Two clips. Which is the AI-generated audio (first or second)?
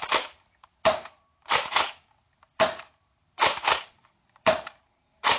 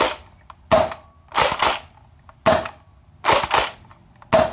first